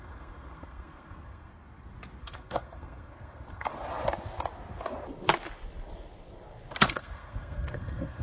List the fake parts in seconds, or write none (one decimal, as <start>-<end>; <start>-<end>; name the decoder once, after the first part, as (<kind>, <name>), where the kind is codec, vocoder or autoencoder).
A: 0.0-1.5 (codec, SNAC); 2.2-3.7; 6.8-8.2